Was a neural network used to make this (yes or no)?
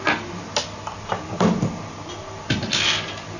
no